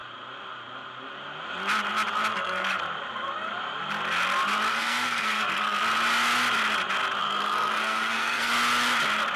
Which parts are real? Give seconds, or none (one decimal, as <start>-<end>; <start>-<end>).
0.0-2.3; 2.8-4.7; 5.8-7.2; 8.5-9.4